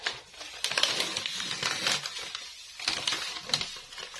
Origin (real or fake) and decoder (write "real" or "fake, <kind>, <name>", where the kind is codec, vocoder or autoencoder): real